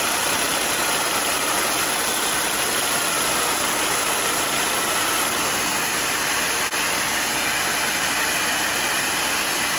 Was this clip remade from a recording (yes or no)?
no